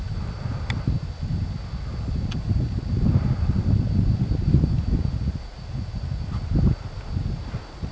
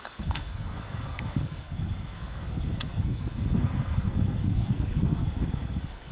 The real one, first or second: first